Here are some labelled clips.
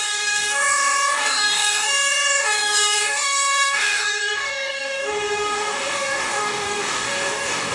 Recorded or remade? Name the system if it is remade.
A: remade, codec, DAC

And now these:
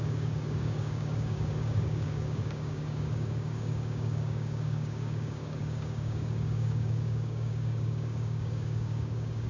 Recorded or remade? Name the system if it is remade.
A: remade, codec, DAC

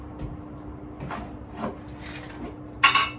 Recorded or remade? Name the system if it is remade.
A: recorded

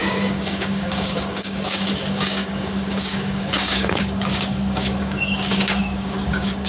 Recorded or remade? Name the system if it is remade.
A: remade, codec, DAC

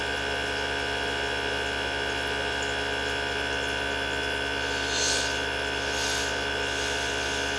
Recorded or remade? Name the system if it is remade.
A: recorded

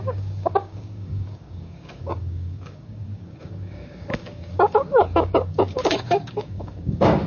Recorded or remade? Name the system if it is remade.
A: remade, codec, DAC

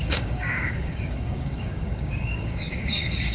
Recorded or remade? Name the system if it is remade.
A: remade, codec, DAC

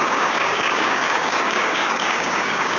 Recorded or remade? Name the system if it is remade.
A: remade, codec, DAC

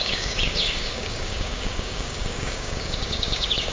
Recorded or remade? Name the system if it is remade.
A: remade, codec, DAC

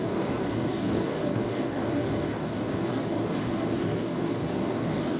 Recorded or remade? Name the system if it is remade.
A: remade, codec, DAC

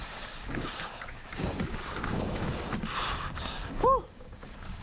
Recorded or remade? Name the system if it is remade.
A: remade, codec, DAC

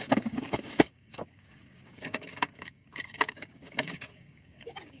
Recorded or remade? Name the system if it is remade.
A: remade, codec, DAC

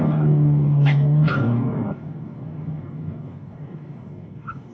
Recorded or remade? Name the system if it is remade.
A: remade, codec, DAC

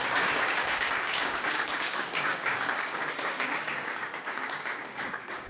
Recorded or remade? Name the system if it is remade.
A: remade, codec, DAC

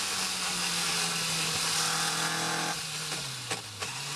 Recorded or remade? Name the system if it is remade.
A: recorded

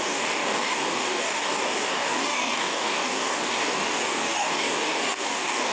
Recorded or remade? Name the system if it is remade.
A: remade, codec, DAC